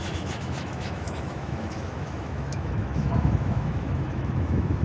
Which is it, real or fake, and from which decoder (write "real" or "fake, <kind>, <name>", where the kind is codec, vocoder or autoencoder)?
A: fake, autoencoder, DAC-VAE